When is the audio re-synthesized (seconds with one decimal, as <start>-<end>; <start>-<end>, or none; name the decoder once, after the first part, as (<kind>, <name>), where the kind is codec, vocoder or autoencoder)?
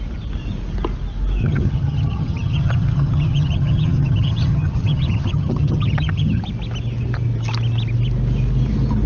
1.4-6.4 (vocoder, HiFi-GAN)